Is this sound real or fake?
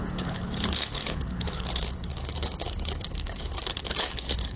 fake